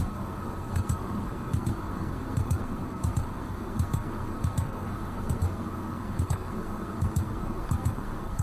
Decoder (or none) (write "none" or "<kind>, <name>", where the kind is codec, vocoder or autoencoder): codec, SNAC